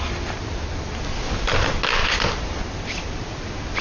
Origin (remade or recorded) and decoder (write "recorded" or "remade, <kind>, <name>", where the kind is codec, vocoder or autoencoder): recorded